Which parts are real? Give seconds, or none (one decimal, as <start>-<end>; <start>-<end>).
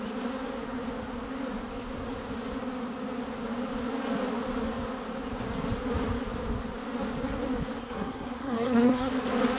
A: 0.0-7.8; 9.1-9.6